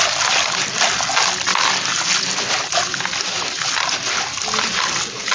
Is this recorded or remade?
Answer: recorded